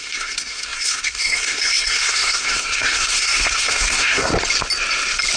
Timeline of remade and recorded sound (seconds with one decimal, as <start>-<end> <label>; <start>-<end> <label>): 0.0-4.3 remade; 4.3-5.4 recorded